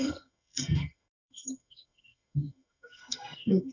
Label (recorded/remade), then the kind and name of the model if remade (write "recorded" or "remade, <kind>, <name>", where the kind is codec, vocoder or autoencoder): remade, codec, SNAC